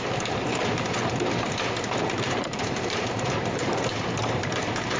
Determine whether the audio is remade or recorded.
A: remade